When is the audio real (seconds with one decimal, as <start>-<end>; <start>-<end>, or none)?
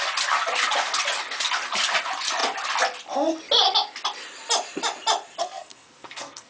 0.0-5.4